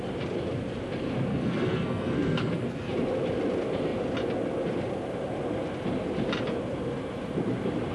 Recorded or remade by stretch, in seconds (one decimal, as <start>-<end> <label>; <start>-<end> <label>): 0.0-1.3 recorded; 1.3-2.9 remade; 2.9-7.9 recorded

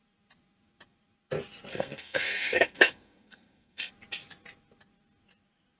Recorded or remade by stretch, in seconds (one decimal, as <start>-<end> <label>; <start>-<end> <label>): 0.0-1.7 recorded; 1.7-3.9 remade; 3.9-5.8 recorded